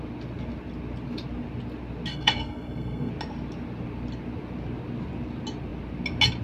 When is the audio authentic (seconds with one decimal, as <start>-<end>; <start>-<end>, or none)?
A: 0.0-2.1; 3.1-6.4